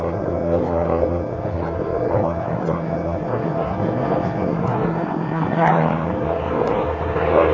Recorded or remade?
remade